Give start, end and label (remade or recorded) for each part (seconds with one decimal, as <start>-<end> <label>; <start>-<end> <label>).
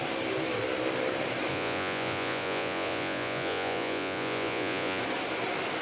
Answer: 0.0-1.5 recorded; 1.5-5.0 remade; 5.0-5.8 recorded